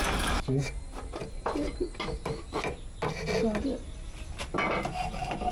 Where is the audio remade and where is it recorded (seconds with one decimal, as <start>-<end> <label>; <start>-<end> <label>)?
0.0-5.5 recorded